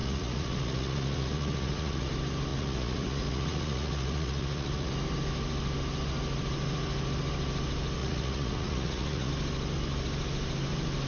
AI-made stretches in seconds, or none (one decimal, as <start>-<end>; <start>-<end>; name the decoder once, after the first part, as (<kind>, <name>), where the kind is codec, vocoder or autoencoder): 0.0-2.1 (vocoder, Vocos); 2.5-4.9; 8.0-9.3